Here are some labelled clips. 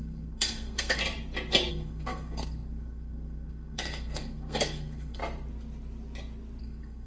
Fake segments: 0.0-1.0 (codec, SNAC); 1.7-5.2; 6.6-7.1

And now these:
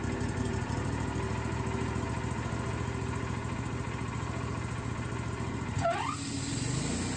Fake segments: none